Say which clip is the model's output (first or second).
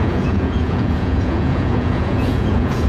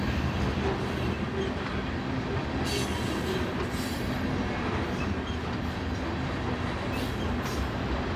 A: first